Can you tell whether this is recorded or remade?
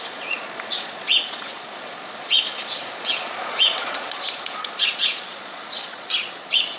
remade